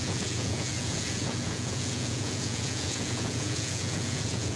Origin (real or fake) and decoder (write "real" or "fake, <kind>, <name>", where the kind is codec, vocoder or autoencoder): fake, vocoder, Vocos